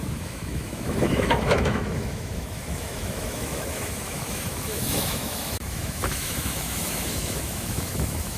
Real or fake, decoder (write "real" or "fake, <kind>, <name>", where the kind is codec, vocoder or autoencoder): fake, autoencoder, DAC-VAE